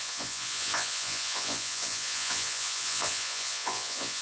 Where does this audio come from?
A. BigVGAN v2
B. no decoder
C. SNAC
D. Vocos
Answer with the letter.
D